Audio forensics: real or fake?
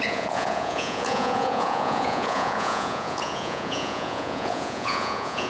fake